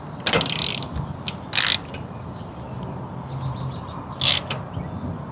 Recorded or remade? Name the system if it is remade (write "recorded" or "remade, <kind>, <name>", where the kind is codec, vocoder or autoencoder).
recorded